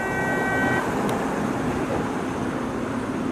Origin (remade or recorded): recorded